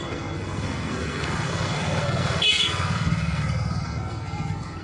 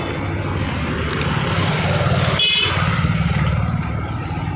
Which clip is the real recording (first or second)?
second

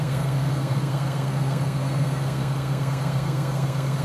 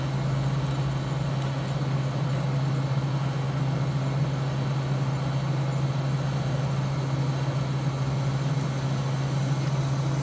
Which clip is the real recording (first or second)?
second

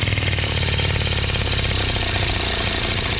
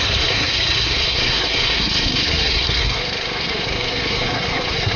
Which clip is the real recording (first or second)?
first